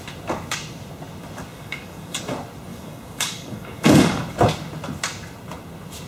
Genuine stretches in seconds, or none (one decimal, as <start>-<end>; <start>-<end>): 0.0-1.5; 2.2-2.7; 4.2-6.1